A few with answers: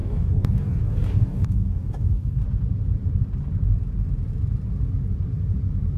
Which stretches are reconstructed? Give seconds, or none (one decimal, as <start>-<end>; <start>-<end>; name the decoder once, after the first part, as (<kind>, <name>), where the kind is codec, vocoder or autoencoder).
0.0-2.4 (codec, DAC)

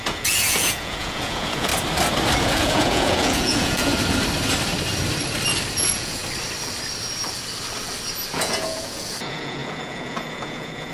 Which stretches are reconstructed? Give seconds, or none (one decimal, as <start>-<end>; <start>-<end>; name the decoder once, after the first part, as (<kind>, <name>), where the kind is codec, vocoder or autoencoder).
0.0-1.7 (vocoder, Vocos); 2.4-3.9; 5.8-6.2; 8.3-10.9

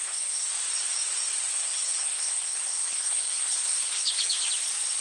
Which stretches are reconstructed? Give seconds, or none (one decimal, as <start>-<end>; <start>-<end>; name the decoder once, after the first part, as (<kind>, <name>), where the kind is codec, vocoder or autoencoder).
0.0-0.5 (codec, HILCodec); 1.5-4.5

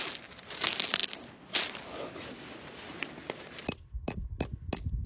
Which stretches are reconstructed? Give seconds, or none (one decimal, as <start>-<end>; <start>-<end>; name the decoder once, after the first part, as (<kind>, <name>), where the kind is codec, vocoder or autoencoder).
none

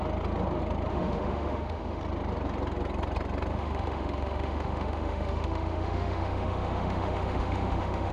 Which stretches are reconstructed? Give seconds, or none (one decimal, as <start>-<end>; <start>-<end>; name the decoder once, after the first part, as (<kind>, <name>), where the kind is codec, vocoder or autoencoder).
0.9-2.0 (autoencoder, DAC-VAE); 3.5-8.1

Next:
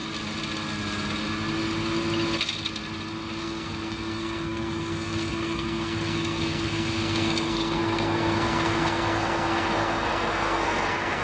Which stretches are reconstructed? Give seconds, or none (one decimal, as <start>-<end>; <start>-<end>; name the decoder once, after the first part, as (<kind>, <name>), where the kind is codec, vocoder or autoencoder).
3.4-11.2 (codec, SNAC)

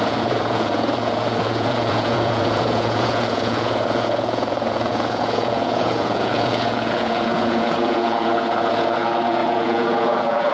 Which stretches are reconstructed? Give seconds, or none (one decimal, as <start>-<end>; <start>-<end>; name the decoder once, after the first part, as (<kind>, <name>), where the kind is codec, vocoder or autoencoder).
0.0-10.5 (vocoder, Vocos)

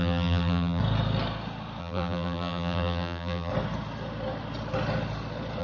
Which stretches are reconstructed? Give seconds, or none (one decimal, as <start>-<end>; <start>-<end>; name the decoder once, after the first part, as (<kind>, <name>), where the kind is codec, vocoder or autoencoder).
0.0-0.8 (vocoder, BigVGAN v2); 1.8-3.5